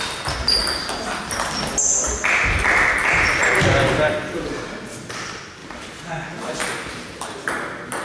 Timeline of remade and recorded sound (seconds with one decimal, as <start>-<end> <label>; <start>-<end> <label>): 0.0-3.0 recorded; 3.0-3.6 remade; 3.6-5.6 recorded; 5.6-6.1 remade; 6.1-8.0 recorded